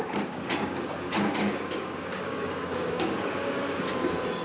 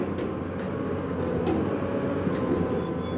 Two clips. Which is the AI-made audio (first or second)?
first